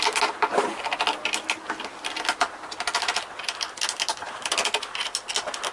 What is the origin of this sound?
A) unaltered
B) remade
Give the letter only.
A